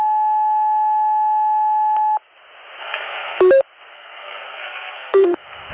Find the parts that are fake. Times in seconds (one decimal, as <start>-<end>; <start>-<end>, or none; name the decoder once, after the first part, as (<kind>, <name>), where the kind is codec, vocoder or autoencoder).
2.8-3.4 (codec, SNAC); 3.9-5.7